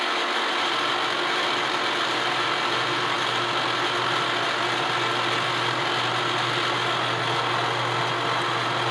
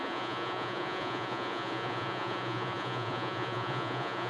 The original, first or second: first